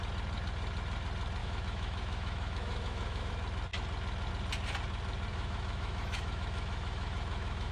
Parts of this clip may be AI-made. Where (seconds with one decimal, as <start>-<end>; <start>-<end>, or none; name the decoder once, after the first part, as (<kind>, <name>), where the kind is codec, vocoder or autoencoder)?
1.4-3.3 (autoencoder, DAC-VAE); 5.3-7.7